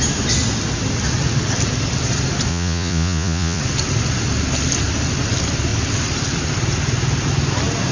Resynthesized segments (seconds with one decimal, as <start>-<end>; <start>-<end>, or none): 2.5-3.6